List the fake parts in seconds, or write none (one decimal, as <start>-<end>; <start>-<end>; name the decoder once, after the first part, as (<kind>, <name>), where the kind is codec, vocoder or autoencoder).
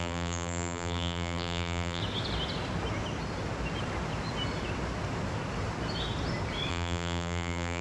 0.0-2.0 (vocoder, BigVGAN v2); 6.7-7.8